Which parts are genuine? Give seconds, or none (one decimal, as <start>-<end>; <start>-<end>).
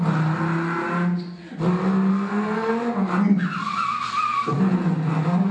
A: 0.0-2.1; 2.7-5.5